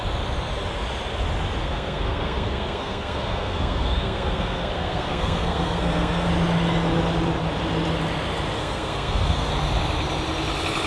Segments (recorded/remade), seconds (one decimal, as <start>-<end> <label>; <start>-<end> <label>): 0.0-1.6 recorded; 1.6-6.3 remade; 6.3-8.6 recorded; 8.6-9.5 remade; 9.5-10.9 recorded